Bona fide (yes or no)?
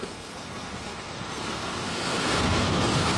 no